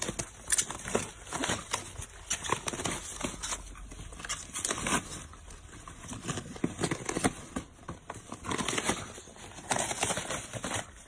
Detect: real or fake real